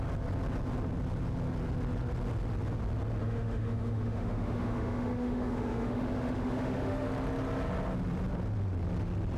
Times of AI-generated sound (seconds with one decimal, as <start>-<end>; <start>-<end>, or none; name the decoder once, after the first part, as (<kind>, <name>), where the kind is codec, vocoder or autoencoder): 3.2-7.1 (autoencoder, DAC-VAE)